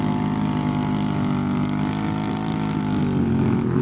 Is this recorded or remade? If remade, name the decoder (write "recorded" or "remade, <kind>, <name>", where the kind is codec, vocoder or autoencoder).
recorded